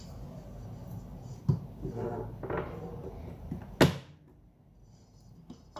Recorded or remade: recorded